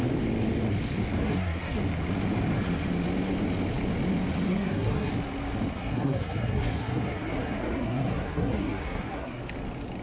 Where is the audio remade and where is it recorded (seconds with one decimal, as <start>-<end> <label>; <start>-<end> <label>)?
0.0-1.2 recorded; 1.2-1.8 remade; 1.8-4.5 recorded; 4.5-5.1 remade; 5.1-5.7 recorded; 5.7-9.4 remade; 9.4-10.0 recorded